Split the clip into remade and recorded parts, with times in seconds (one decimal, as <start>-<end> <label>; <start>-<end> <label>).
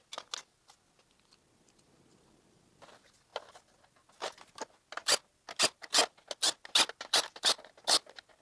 0.0-8.4 recorded